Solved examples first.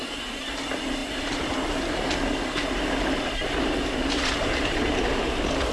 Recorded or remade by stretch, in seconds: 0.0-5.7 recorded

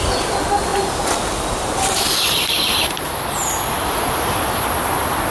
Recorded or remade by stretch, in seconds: 0.0-5.3 recorded